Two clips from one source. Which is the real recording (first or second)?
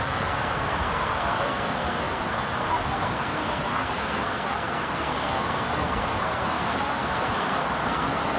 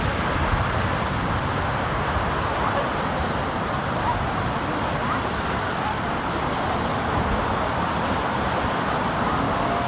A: second